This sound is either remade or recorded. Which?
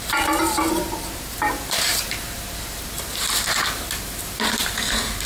remade